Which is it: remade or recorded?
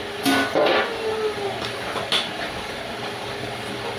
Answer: recorded